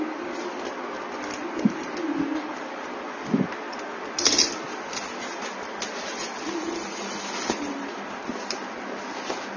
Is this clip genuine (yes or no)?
yes